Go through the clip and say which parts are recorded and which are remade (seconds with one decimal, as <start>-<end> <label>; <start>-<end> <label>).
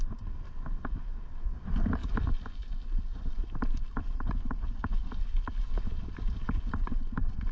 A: 0.0-2.0 recorded; 2.0-5.2 remade; 5.2-7.5 recorded